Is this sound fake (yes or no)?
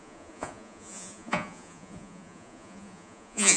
yes